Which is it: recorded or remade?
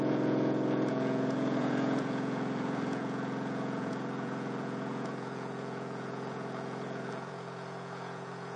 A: remade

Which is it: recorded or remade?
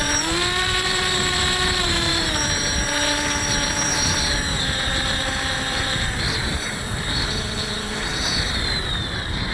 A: remade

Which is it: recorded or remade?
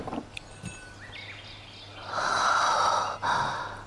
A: recorded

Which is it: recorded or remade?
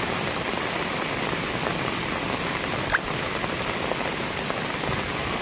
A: recorded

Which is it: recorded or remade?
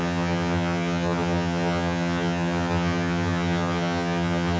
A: remade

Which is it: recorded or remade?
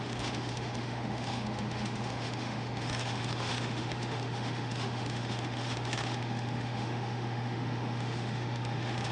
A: remade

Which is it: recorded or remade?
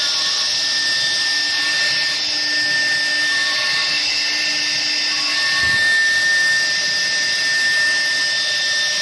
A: recorded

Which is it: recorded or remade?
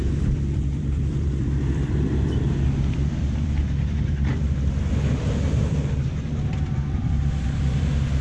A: remade